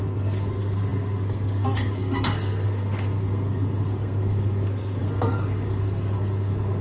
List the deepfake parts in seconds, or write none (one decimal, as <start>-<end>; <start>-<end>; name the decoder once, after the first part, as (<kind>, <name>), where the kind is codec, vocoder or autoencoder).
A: 0.0-6.8 (codec, SNAC)